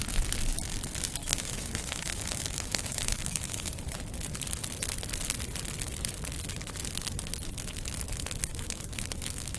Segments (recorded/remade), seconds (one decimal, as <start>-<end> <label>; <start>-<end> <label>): 0.0-1.2 recorded; 1.2-3.7 remade; 3.7-8.5 recorded; 8.5-9.6 remade